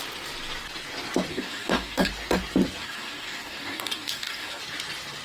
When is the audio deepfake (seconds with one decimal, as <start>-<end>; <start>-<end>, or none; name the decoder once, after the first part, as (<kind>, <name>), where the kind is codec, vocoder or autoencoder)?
1.3-2.1 (codec, DAC); 2.8-4.6